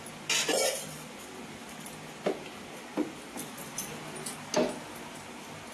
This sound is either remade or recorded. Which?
recorded